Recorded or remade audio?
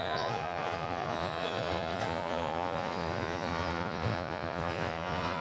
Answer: remade